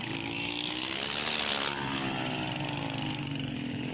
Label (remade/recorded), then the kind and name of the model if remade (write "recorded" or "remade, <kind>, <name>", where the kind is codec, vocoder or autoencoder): recorded